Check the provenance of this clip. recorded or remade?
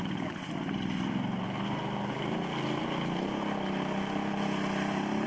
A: recorded